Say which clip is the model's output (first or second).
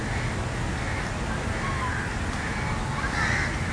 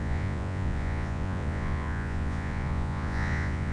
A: second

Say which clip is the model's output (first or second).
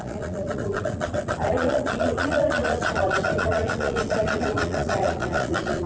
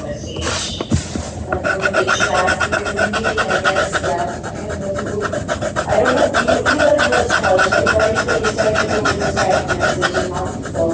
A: first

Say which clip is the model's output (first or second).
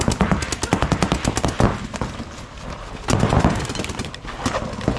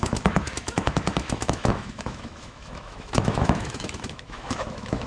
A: second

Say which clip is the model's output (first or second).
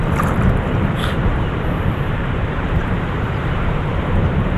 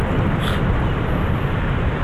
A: first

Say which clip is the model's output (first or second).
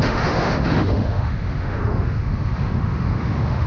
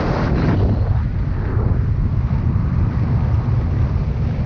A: first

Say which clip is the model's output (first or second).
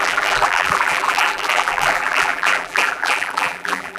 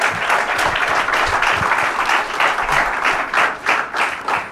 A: first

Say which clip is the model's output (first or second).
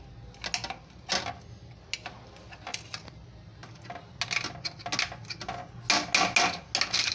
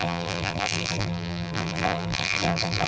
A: second